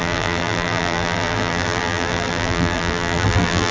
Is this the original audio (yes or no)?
no